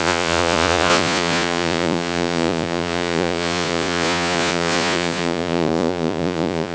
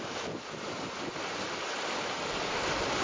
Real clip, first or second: second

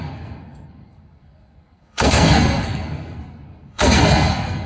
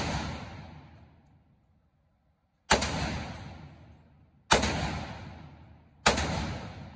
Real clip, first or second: second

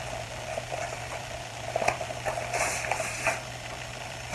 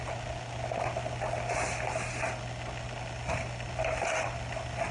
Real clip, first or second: second